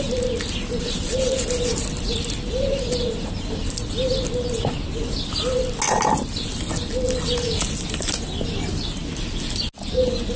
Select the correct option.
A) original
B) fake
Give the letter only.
A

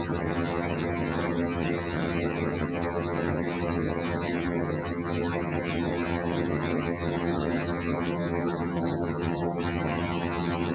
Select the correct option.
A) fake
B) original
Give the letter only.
A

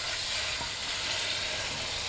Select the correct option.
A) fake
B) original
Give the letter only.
B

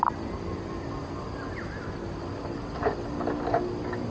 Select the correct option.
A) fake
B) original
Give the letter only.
B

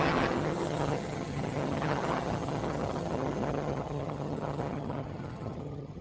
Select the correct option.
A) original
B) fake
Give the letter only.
B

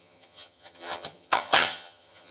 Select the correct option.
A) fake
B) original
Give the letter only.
A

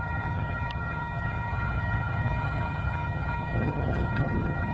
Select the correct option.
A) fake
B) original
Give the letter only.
A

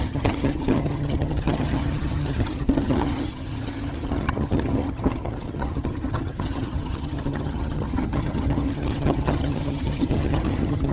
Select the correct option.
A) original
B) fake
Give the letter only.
B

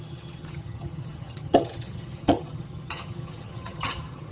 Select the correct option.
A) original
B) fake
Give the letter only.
B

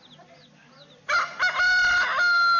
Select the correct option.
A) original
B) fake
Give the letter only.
A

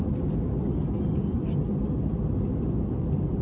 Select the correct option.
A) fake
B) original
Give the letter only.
B